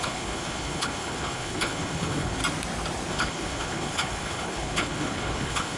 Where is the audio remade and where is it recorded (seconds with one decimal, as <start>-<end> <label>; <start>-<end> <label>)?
0.0-2.4 remade; 2.4-3.1 recorded; 3.1-5.8 remade